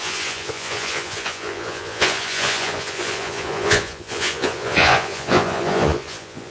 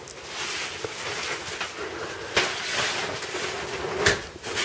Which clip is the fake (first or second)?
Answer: first